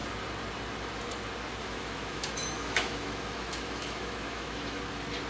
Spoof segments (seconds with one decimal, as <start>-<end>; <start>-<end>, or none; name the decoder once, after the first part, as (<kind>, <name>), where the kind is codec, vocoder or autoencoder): 1.6-4.8 (autoencoder, DAC-VAE)